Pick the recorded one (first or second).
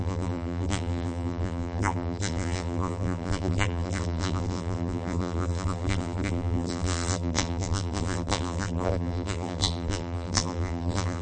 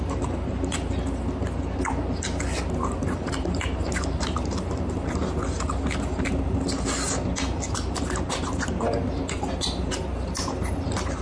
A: second